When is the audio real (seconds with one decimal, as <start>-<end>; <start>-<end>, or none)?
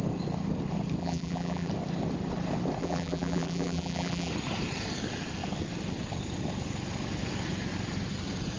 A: 0.0-1.0; 1.7-2.8; 4.3-8.6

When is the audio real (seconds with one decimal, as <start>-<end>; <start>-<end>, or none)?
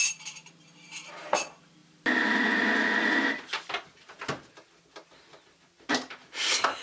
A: 1.8-5.9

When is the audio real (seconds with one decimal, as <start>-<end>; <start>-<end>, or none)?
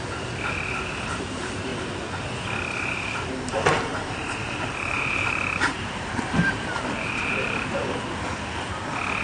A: 0.0-3.9; 7.7-9.2